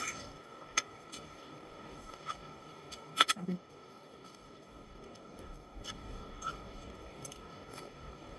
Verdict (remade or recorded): remade